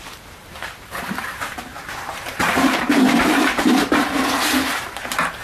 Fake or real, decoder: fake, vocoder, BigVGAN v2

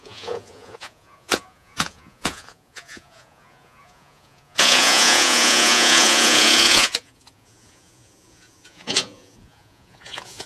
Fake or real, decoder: fake, vocoder, Vocos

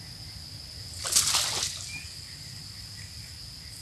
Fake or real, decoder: real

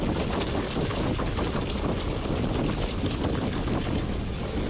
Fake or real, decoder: real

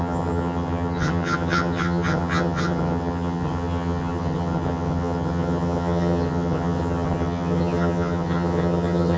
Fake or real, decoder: fake, vocoder, HiFi-GAN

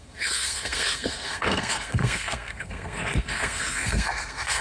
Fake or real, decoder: fake, codec, SNAC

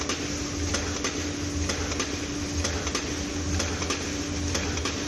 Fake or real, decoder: real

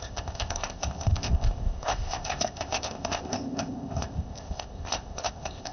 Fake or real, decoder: fake, codec, ZipCodec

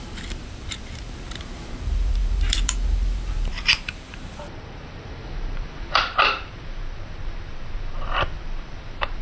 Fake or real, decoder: fake, vocoder, BigVGAN v2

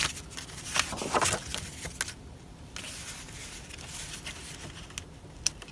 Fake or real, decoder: real